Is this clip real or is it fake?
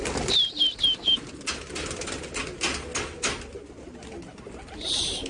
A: real